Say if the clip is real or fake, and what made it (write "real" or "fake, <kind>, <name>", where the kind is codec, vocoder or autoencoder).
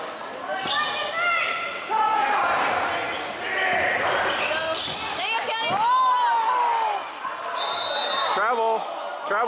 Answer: real